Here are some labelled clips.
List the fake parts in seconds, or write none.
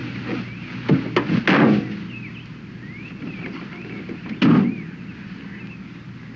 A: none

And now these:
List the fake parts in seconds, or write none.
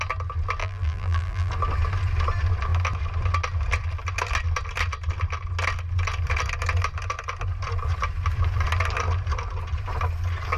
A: 0.6-1.5 (vocoder, BigVGAN v2)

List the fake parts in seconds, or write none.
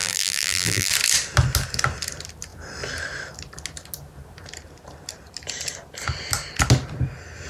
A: 0.0-0.9 (vocoder, BigVGAN v2)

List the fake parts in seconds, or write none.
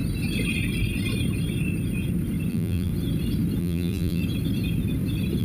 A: 2.5-2.9 (vocoder, BigVGAN v2); 3.6-4.2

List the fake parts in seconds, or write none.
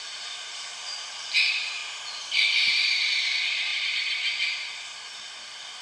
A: 0.0-0.7 (vocoder, BigVGAN v2); 1.2-1.8; 2.5-5.8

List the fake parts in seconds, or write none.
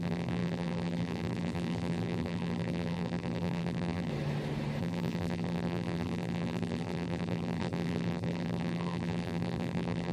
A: 0.0-4.1 (vocoder, BigVGAN v2); 4.8-10.1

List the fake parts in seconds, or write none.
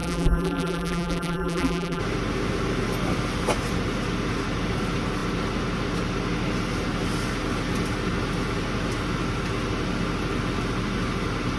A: 0.0-2.0 (vocoder, BigVGAN v2)